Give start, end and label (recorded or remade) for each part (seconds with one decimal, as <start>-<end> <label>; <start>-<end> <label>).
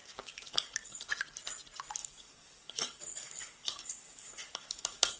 0.0-1.1 remade; 1.1-2.0 recorded; 2.0-5.2 remade